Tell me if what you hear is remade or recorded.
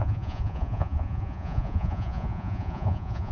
remade